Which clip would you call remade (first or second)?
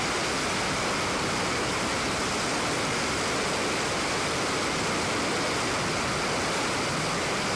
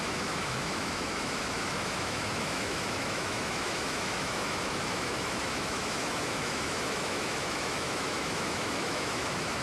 second